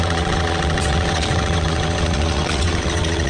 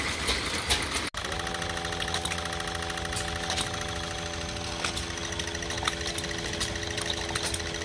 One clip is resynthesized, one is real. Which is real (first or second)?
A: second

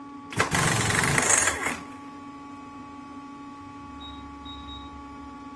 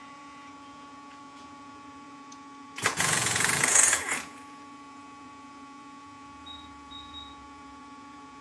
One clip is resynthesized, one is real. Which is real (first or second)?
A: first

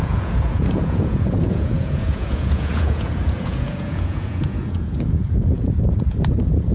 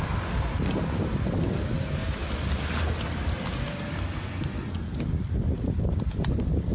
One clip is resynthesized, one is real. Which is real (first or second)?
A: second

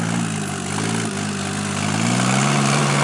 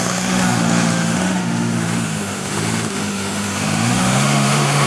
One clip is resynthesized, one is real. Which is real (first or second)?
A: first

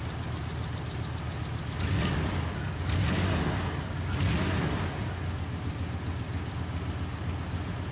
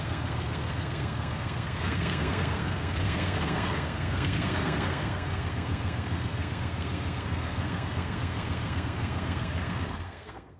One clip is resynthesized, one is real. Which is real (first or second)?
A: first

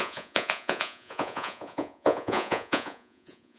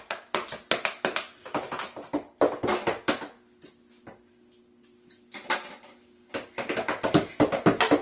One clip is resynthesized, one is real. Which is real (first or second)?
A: second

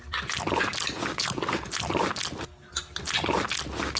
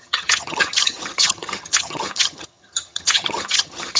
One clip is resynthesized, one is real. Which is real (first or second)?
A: first